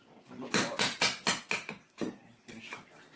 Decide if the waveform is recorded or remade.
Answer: recorded